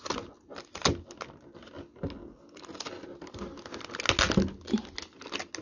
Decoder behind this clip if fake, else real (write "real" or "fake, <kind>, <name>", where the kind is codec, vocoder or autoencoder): real